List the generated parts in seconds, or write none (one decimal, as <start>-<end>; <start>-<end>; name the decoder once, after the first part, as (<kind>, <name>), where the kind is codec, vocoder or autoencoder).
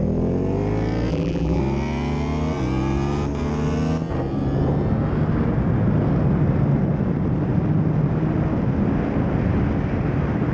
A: 1.1-1.6 (vocoder, BigVGAN v2)